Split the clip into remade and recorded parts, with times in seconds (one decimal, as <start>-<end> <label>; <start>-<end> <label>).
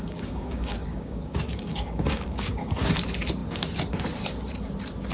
0.0-2.9 remade; 2.9-5.1 recorded